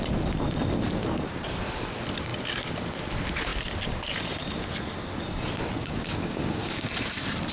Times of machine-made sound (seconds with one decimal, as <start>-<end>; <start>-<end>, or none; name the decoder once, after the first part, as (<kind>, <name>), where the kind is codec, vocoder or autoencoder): 1.0-1.5 (codec, DAC); 5.8-6.9